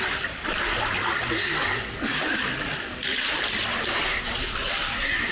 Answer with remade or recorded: recorded